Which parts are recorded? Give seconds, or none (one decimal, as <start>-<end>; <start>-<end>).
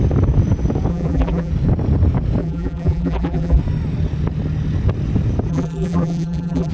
0.0-0.9; 1.5-2.4; 3.6-5.5